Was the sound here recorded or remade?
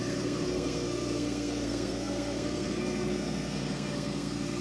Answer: remade